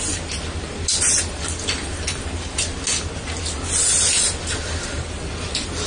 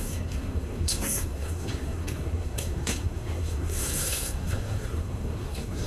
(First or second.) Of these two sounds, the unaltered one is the first